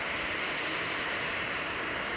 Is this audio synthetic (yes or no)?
no